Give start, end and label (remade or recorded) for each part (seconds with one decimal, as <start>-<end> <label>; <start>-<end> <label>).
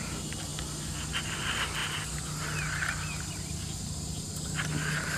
0.0-5.2 recorded